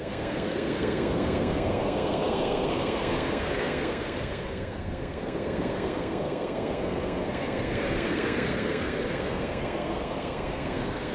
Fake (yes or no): yes